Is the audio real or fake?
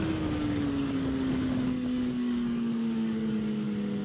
fake